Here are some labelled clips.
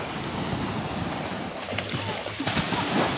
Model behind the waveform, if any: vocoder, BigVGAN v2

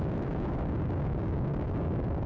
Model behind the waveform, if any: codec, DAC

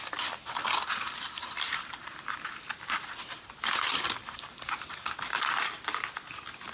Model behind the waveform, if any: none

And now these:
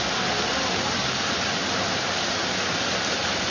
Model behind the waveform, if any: none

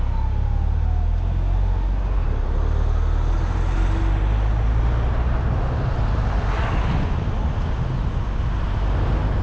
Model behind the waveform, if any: none